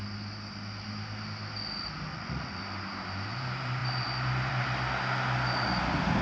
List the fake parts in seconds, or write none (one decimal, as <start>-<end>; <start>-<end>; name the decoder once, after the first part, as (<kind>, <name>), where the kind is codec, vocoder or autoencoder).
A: 2.1-2.6 (vocoder, Vocos)

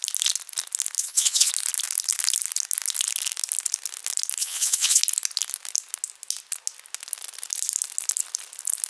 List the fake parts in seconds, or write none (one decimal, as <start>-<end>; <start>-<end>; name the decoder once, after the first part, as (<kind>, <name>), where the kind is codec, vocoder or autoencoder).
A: 1.0-1.5 (vocoder, Vocos); 4.4-5.0

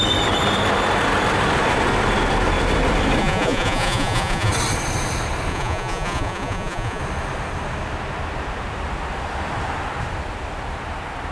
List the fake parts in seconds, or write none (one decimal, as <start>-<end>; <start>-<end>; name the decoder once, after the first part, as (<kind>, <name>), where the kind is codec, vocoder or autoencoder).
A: 3.2-4.5 (vocoder, Vocos); 5.5-7.0

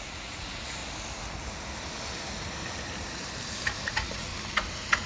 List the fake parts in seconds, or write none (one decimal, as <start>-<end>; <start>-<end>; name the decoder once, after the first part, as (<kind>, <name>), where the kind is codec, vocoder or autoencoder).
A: 0.0-0.8 (vocoder, Vocos); 3.9-4.3